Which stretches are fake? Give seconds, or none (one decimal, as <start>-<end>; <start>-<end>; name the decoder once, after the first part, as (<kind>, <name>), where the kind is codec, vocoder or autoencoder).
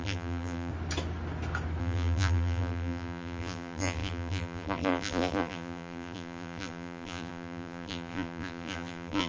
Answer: 0.0-0.7 (vocoder, BigVGAN v2); 1.8-9.3